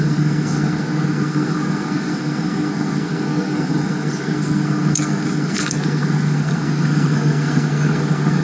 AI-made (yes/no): yes